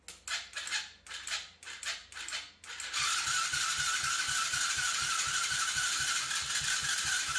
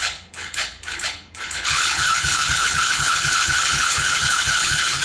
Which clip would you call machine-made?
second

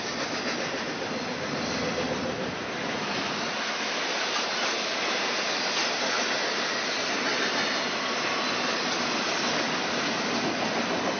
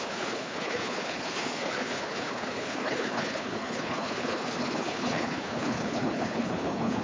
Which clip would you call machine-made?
second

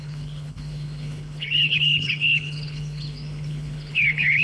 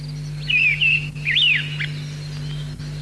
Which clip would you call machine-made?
first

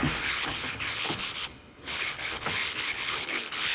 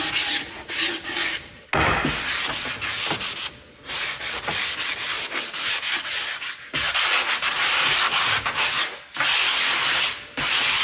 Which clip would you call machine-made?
first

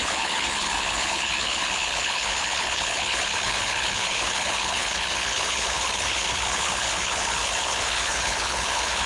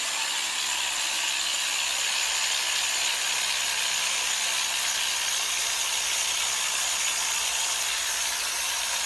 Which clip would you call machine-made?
first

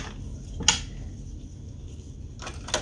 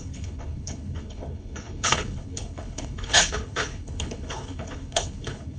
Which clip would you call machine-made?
second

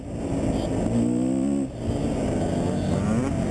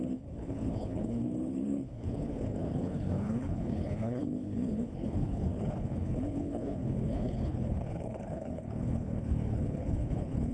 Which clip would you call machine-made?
second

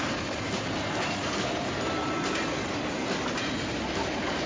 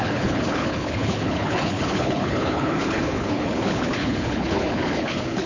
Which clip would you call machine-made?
second